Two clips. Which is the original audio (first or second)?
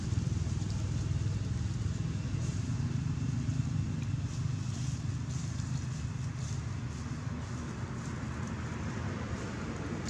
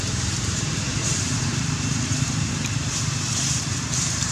first